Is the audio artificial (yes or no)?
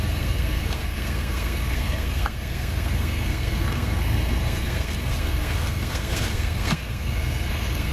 yes